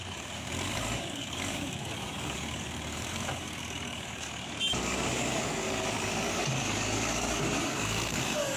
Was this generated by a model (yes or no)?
yes